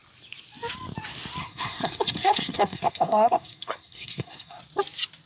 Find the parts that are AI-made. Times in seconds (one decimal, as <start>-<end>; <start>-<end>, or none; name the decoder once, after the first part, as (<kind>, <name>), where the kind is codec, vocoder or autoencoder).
1.4-4.6 (codec, SNAC)